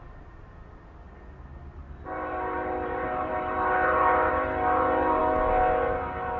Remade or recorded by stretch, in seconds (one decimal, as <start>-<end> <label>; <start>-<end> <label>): 0.0-1.7 recorded; 1.7-4.3 remade; 4.3-6.4 recorded